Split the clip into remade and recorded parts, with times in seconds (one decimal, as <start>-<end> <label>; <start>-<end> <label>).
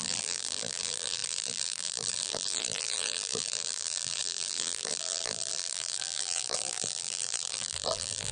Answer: 0.0-8.3 remade